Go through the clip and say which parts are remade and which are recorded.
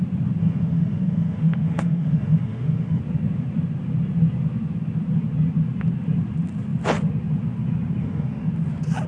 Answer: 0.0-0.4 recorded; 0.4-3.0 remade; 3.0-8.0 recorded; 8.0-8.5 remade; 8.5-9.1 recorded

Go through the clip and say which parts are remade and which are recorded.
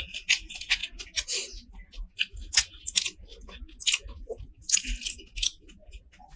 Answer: 0.0-6.4 recorded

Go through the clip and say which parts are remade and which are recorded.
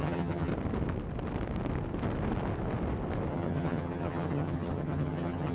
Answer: 0.0-0.5 remade; 0.5-3.3 recorded; 3.3-5.5 remade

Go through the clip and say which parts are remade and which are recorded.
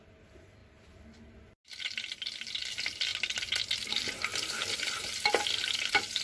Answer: 0.0-4.3 recorded; 4.3-5.3 remade; 5.3-6.2 recorded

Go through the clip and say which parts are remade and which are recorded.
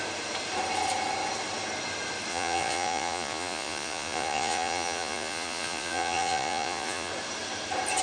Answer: 0.0-2.3 recorded; 2.3-7.1 remade; 7.1-8.0 recorded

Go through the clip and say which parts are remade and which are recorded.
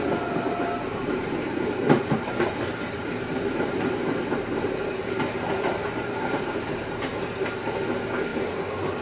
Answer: 0.0-0.9 recorded; 0.9-4.7 remade; 4.7-5.7 recorded; 5.7-7.7 remade; 7.7-9.0 recorded